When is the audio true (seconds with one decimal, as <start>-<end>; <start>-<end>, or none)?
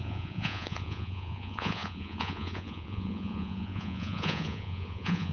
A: none